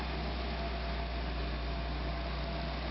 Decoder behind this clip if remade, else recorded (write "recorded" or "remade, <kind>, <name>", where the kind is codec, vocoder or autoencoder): recorded